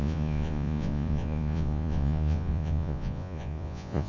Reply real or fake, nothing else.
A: fake